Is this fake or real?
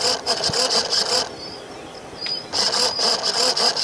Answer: real